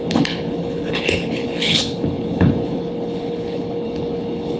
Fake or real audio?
fake